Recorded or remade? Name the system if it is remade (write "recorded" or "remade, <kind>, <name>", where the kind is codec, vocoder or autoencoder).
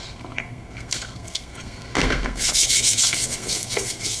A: remade, codec, SNAC